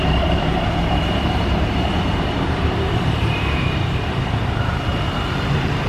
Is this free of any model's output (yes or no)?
no